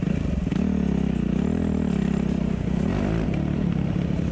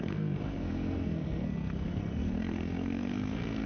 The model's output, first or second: second